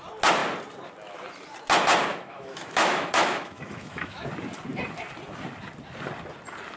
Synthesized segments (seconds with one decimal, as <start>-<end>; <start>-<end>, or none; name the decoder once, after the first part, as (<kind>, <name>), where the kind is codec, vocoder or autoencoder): 2.1-4.3 (autoencoder, DAC-VAE)